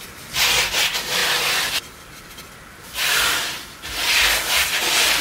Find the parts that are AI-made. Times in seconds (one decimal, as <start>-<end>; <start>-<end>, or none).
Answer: none